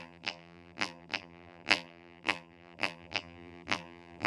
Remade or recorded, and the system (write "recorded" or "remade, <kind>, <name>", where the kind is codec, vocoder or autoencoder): remade, vocoder, BigVGAN v2